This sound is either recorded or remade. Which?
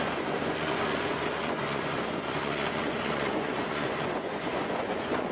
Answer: remade